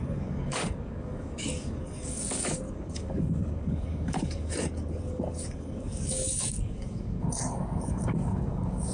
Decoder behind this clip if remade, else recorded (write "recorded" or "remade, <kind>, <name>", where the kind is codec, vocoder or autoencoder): remade, codec, DAC